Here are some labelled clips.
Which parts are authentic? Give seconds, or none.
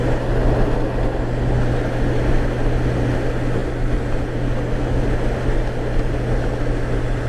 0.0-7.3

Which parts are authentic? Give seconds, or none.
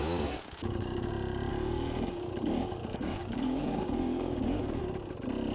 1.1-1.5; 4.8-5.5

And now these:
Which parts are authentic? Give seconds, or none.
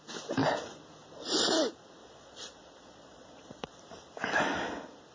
0.0-2.0; 3.8-5.1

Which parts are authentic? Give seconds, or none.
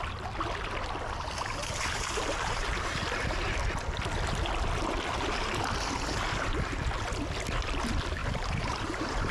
0.0-1.6; 2.7-8.2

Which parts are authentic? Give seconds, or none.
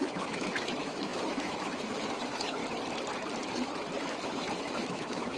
2.6-4.0